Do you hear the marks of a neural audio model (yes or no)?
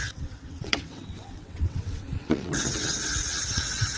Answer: yes